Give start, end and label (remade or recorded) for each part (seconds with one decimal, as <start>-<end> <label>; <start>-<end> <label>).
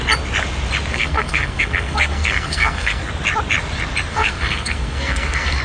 0.0-0.9 recorded; 0.9-3.1 remade; 3.1-4.1 recorded; 4.1-5.6 remade